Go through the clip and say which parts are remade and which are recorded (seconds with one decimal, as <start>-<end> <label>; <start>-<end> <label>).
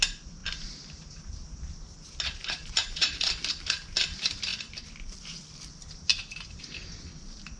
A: 0.0-0.4 recorded; 0.4-1.7 remade; 1.7-2.4 recorded; 2.4-3.3 remade; 3.3-6.1 recorded; 6.1-6.6 remade; 6.6-7.6 recorded